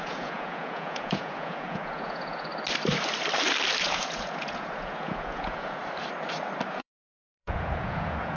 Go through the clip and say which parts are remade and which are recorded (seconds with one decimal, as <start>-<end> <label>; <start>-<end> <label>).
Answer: 0.0-2.5 remade; 2.5-3.8 recorded; 3.8-5.8 remade; 5.8-6.7 recorded; 6.7-8.4 remade